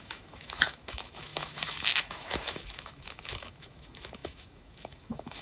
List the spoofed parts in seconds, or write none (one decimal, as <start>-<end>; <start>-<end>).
0.0-5.4